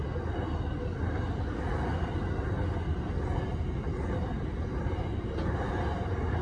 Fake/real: real